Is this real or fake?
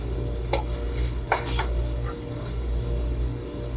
fake